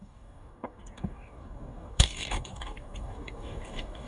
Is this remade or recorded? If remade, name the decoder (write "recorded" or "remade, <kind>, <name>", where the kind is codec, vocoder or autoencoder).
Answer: remade, codec, DAC